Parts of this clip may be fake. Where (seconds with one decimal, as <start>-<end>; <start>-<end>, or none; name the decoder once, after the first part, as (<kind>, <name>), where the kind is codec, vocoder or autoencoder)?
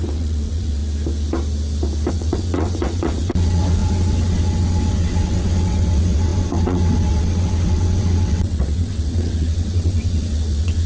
0.0-0.8 (vocoder, WaveNeXt); 2.1-10.9